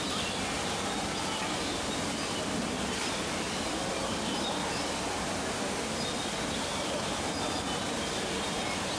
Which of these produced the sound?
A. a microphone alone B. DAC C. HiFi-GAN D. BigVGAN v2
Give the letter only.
A